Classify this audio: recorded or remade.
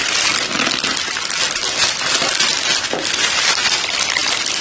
recorded